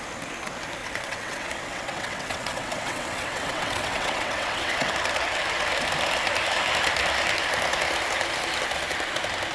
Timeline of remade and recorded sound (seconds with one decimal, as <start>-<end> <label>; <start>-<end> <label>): 0.0-0.8 recorded; 0.8-4.9 remade; 4.9-9.5 recorded